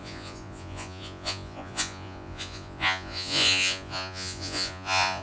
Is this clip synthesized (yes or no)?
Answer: yes